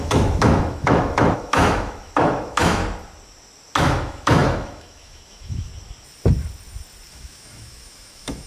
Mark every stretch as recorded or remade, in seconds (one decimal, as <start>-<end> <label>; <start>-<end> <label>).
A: 0.0-2.8 remade; 2.8-3.8 recorded; 3.8-5.7 remade; 5.7-7.1 recorded; 7.1-8.5 remade